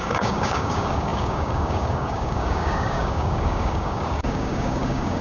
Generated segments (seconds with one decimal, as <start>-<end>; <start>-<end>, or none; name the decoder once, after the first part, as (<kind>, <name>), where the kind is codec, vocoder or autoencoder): 0.0-5.2 (codec, DAC)